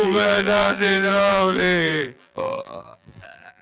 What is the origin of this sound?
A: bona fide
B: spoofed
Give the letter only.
B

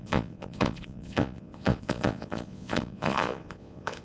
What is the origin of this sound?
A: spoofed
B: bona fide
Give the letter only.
A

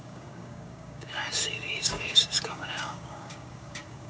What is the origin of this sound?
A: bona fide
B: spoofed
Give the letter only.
B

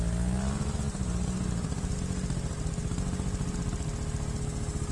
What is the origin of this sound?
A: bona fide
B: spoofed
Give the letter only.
A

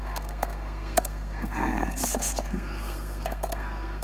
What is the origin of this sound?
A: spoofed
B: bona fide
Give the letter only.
A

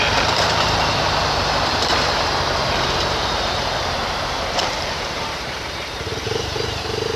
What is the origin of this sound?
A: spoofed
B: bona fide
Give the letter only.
A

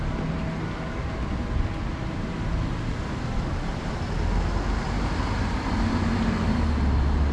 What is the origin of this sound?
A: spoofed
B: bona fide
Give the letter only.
B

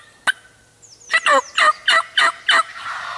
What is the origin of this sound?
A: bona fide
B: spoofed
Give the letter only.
A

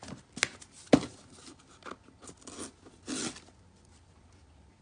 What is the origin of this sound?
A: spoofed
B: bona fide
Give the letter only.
B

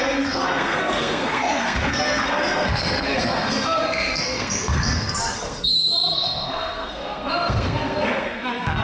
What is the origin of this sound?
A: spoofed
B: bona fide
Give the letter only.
A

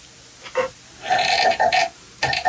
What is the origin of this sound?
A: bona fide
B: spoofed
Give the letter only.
A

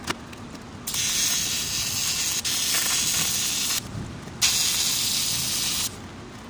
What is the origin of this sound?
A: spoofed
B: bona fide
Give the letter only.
B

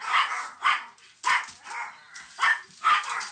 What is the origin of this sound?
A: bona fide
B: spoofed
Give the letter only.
A